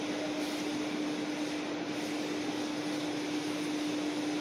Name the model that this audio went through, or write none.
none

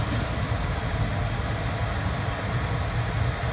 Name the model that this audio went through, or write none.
none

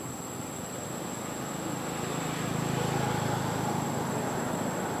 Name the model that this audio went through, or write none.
none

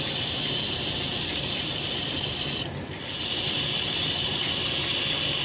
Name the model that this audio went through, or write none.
vocoder, BigVGAN v2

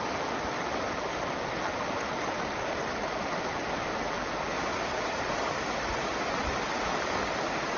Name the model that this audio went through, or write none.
none